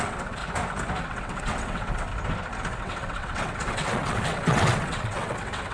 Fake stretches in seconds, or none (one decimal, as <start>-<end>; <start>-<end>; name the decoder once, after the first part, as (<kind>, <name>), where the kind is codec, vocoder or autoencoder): 0.0-0.4 (vocoder, WaveNeXt); 1.0-2.1; 2.8-5.7